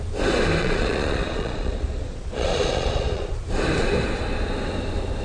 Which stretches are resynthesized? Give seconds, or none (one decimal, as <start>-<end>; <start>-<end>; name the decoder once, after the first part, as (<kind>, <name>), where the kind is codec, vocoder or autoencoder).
0.6-3.4 (vocoder, Vocos)